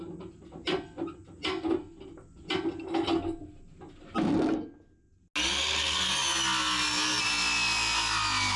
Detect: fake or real real